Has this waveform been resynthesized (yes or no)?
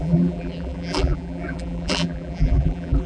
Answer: yes